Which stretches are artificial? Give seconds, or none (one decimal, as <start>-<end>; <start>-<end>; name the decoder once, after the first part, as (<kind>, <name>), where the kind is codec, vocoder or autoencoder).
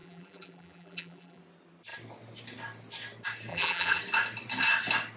0.0-1.4 (vocoder, BigVGAN v2); 3.5-4.0